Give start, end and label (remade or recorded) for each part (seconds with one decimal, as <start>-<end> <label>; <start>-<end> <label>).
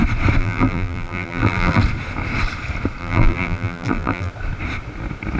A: 0.0-0.4 recorded; 0.4-1.8 remade; 1.8-3.0 recorded; 3.0-4.3 remade; 4.3-5.4 recorded